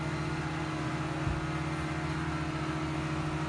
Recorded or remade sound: recorded